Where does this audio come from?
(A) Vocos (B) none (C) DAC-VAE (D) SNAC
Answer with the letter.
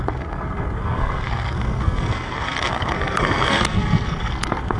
D